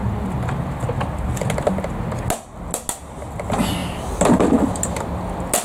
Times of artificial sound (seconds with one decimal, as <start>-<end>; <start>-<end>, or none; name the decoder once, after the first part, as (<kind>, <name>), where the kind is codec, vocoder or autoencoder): none